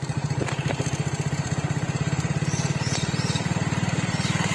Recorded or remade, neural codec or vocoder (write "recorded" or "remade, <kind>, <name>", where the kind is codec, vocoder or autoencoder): remade, vocoder, BigVGAN v2